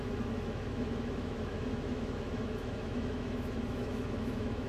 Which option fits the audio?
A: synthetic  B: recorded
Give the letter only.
A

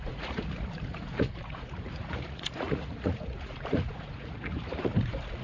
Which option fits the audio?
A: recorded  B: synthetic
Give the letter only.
B